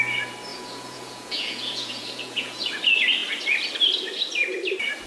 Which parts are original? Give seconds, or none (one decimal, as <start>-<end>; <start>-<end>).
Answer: 0.0-0.5; 2.7-5.1